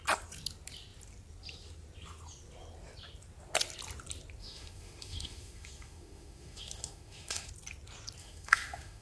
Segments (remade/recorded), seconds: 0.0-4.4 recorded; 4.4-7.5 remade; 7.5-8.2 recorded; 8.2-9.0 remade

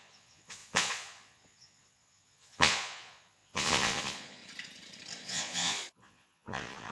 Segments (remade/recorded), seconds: 0.0-4.4 remade; 4.4-5.2 recorded; 5.2-6.9 remade

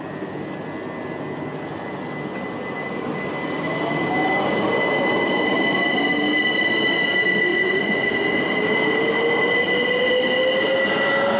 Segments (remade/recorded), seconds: 0.0-7.5 recorded; 7.5-8.1 remade; 8.1-11.4 recorded

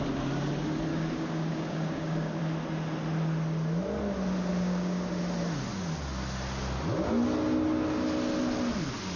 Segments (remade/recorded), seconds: 0.0-0.9 recorded; 0.9-2.4 remade; 2.4-4.5 recorded; 4.5-5.2 remade; 5.2-9.2 recorded

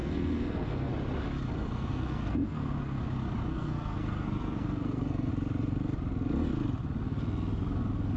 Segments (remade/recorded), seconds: 0.0-0.9 remade; 0.9-1.7 recorded; 1.7-3.0 remade; 3.0-3.5 recorded; 3.5-5.3 remade; 5.3-8.2 recorded

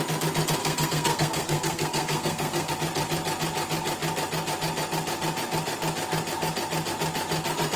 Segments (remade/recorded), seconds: 0.0-0.6 recorded; 0.6-2.7 remade; 2.7-7.8 recorded

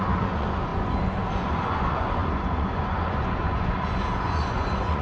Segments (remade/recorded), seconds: 0.0-5.0 remade

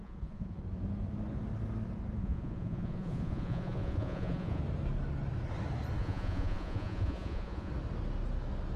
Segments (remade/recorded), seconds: 0.0-0.6 remade; 0.6-2.2 recorded; 2.2-4.6 remade; 4.6-6.0 recorded; 6.0-7.7 remade; 7.7-8.8 recorded